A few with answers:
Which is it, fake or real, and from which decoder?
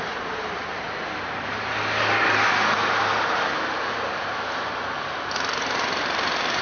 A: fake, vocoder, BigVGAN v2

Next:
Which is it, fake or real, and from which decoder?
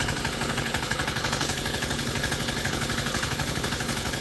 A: fake, codec, HILCodec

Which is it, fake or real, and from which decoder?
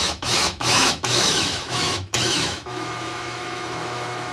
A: fake, autoencoder, DAC-VAE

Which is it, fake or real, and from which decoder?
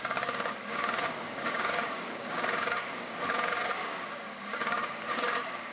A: fake, codec, DAC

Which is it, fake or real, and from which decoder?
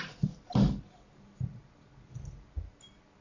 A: real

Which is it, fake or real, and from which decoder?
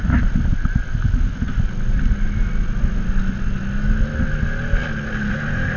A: real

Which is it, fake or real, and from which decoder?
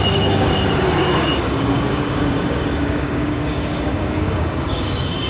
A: fake, codec, DAC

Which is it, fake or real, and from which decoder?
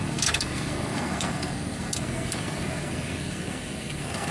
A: fake, codec, SNAC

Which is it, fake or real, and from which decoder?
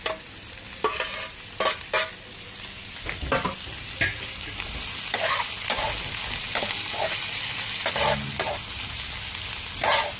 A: real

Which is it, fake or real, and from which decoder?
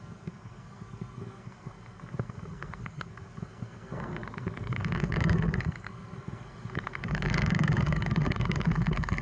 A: fake, codec, SNAC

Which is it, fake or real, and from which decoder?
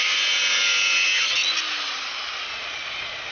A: real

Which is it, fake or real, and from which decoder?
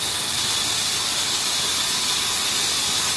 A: real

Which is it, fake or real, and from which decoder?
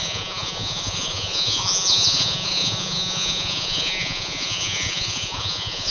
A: fake, vocoder, Vocos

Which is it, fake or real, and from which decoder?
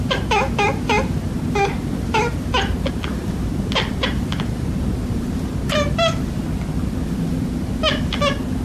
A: real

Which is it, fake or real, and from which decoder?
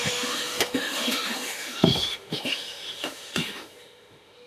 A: fake, autoencoder, DAC-VAE